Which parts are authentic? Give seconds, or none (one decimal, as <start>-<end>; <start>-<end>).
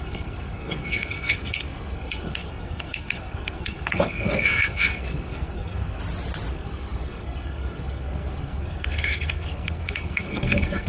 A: 6.0-6.5